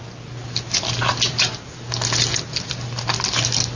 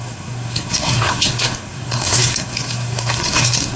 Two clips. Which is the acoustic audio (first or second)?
first